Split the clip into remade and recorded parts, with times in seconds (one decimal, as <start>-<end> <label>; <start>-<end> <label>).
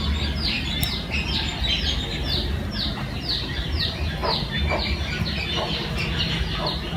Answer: 0.0-7.0 recorded